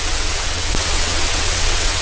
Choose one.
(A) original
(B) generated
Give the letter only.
B